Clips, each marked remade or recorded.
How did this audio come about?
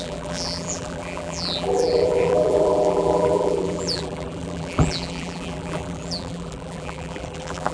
remade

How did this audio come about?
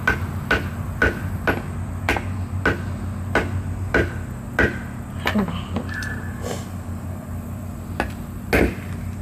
recorded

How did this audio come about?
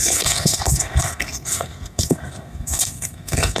remade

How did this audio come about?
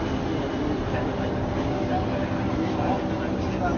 recorded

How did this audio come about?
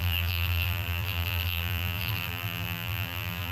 remade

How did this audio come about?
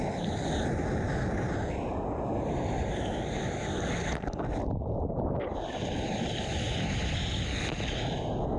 recorded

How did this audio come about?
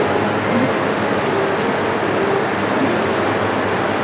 recorded